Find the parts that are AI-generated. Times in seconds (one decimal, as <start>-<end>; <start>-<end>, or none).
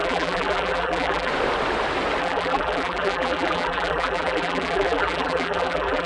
0.0-1.3; 2.2-6.1